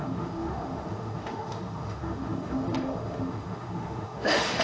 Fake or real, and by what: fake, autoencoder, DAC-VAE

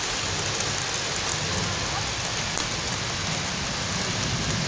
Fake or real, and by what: real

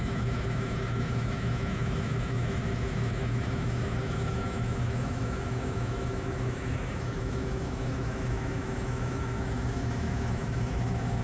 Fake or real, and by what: fake, autoencoder, DAC-VAE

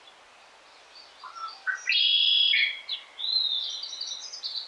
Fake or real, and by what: real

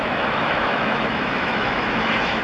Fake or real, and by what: fake, autoencoder, DAC-VAE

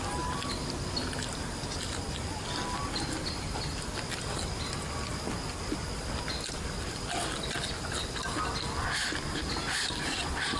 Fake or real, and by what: real